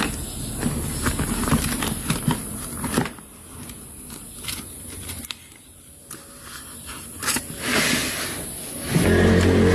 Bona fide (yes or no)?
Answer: yes